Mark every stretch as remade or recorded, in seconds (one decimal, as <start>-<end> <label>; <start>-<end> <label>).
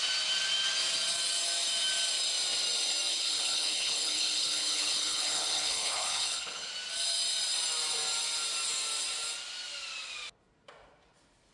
0.0-3.1 recorded; 3.1-6.7 remade; 6.7-11.5 recorded